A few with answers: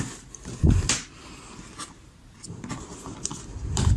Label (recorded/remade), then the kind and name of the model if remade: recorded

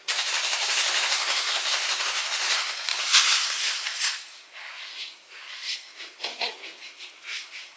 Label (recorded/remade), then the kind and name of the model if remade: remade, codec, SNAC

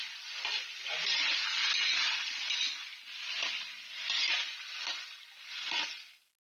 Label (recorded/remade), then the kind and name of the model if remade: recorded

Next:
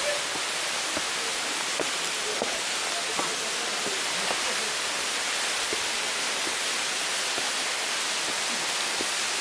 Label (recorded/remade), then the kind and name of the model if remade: recorded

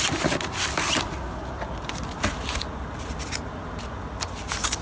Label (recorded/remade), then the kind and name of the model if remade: recorded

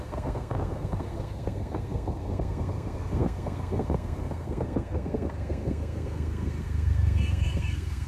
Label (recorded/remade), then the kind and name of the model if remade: remade, codec, SNAC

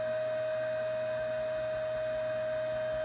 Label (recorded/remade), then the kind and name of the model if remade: recorded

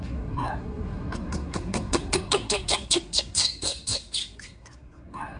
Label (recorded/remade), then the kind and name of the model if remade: remade, codec, SNAC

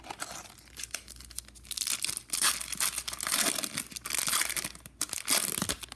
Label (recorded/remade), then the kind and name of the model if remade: recorded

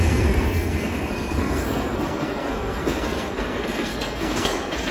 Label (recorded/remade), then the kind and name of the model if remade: remade, codec, SNAC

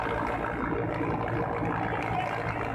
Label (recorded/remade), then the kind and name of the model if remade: recorded